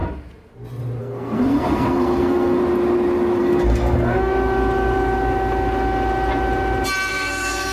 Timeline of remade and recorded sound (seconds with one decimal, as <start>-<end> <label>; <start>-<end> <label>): 0.0-1.0 recorded; 1.0-2.6 remade; 2.6-3.4 recorded; 3.4-4.3 remade; 4.3-7.1 recorded; 7.1-7.7 remade